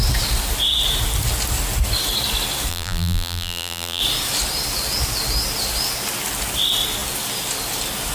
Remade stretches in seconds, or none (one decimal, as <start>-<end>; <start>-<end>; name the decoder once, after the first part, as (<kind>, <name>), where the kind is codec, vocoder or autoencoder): 2.7-4.0 (vocoder, BigVGAN v2)